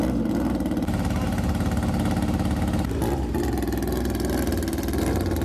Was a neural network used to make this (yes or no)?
no